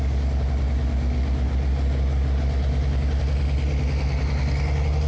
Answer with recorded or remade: recorded